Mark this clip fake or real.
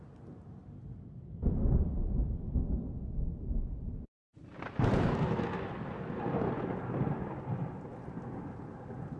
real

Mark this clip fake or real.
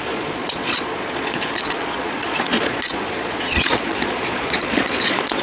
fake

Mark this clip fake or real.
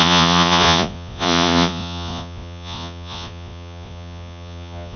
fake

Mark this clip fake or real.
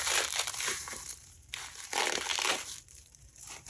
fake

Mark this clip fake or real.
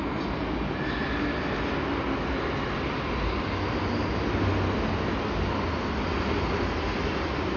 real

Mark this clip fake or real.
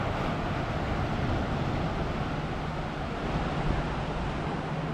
real